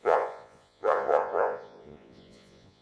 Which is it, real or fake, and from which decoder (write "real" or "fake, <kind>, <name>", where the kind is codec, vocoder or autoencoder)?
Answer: fake, vocoder, Vocos